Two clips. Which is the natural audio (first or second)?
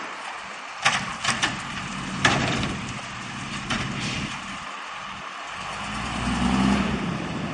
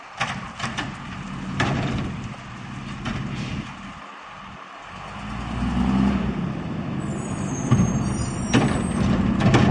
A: second